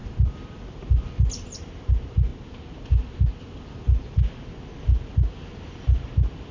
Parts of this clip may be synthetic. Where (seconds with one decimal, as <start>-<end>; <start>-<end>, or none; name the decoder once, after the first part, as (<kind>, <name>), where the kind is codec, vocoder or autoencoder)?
0.0-2.3 (vocoder, BigVGAN v2); 3.7-6.5